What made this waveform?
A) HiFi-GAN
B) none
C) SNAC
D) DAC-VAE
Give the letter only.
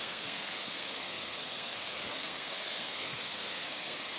C